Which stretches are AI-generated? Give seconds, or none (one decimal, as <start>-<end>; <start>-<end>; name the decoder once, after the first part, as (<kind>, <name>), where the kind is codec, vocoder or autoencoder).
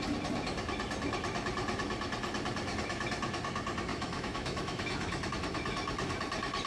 3.9-5.3 (autoencoder, DAC-VAE)